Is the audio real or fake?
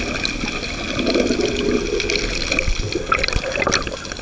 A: real